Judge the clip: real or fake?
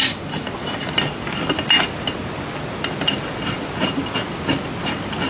real